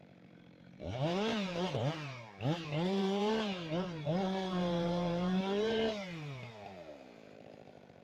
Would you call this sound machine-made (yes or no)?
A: yes